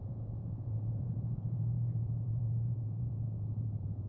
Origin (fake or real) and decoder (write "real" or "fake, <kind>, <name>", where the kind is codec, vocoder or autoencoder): fake, vocoder, Vocos